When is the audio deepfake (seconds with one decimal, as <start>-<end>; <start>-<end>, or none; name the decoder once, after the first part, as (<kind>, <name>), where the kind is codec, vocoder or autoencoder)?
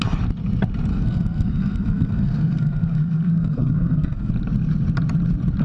0.9-4.3 (codec, SNAC)